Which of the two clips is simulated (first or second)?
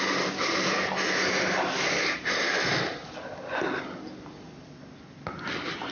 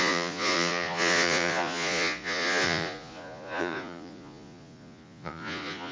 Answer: second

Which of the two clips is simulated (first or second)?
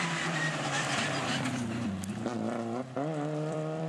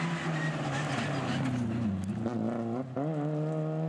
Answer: first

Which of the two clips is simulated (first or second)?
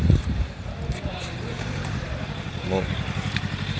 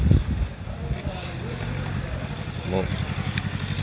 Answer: first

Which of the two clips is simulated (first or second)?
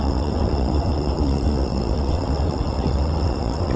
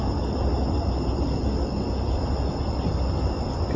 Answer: first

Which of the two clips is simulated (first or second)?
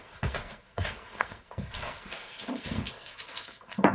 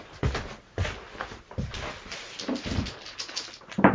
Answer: first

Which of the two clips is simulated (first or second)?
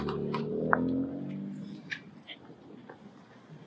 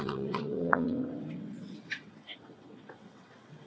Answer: second